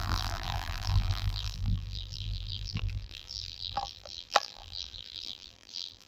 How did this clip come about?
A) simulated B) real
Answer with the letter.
A